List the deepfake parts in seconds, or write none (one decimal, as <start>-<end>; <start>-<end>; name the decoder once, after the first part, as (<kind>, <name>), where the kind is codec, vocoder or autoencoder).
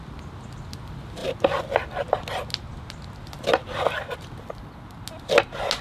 none